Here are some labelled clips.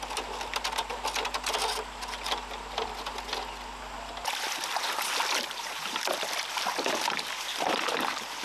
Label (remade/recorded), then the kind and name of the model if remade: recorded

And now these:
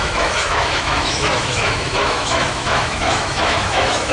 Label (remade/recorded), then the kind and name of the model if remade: remade, autoencoder, DAC-VAE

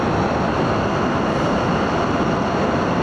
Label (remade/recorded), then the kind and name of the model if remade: recorded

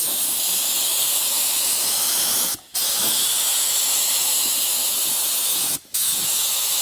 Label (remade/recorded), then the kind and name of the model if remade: remade, autoencoder, DAC-VAE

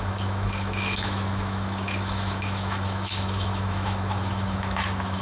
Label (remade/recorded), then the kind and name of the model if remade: remade, autoencoder, DAC-VAE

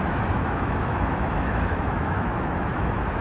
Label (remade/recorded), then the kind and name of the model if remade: remade, autoencoder, DAC-VAE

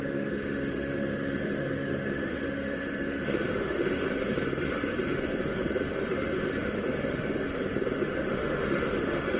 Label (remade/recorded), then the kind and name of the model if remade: remade, autoencoder, DAC-VAE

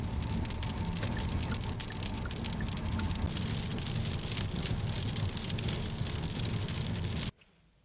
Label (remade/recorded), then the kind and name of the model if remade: recorded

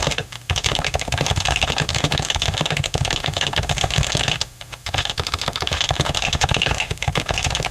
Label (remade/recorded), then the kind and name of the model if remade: remade, autoencoder, DAC-VAE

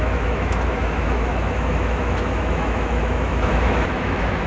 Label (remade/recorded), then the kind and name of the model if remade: remade, autoencoder, DAC-VAE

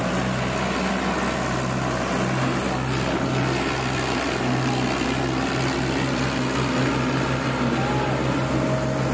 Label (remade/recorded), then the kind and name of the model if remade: recorded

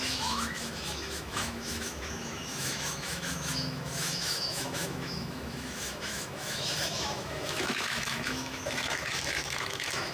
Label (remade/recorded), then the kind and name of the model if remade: remade, autoencoder, DAC-VAE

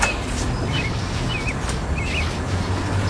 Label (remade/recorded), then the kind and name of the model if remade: recorded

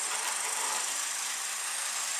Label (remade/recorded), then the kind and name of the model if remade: recorded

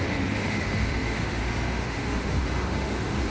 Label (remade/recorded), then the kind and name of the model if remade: remade, autoencoder, DAC-VAE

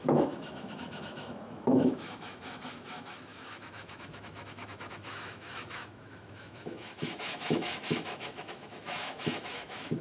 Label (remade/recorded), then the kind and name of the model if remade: remade, autoencoder, DAC-VAE